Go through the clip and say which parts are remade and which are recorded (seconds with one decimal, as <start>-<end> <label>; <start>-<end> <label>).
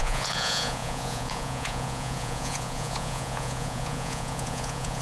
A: 0.0-5.0 remade